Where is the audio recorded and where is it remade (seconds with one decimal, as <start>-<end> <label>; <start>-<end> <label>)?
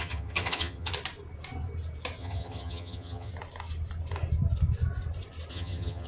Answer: 0.0-0.9 remade; 0.9-2.2 recorded; 2.2-3.3 remade; 3.3-5.5 recorded; 5.5-6.1 remade